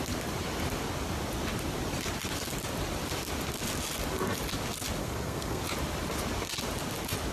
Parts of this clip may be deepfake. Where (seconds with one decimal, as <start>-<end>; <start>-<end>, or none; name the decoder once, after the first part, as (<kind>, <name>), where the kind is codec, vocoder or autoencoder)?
5.0-5.6 (codec, SNAC)